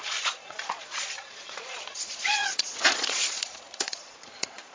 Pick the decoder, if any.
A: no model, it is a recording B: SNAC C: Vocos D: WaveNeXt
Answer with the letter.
C